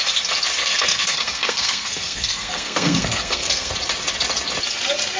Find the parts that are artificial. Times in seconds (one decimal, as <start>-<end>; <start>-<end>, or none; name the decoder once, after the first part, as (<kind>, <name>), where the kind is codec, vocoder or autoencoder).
0.6-3.7 (codec, SNAC)